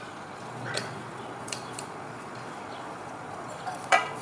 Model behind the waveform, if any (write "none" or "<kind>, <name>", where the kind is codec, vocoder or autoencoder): vocoder, Vocos